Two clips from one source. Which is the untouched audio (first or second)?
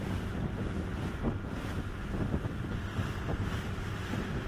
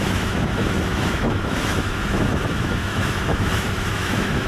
first